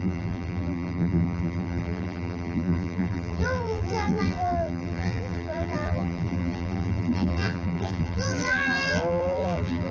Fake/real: fake